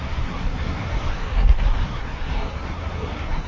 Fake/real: fake